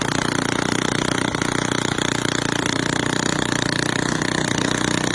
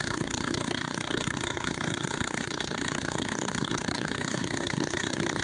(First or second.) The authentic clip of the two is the first